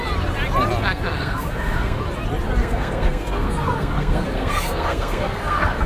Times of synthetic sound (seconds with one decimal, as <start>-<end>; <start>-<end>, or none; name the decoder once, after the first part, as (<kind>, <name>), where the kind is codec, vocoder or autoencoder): 0.8-2.0 (codec, SNAC); 2.6-5.9